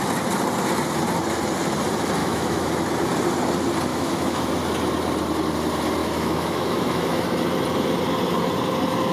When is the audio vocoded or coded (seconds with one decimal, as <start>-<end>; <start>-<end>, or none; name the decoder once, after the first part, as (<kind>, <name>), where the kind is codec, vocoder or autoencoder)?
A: 2.2-2.7 (autoencoder, DAC-VAE); 3.9-4.5; 6.0-7.2